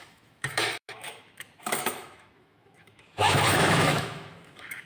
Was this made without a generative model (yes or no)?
no